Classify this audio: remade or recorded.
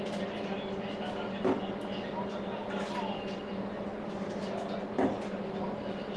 recorded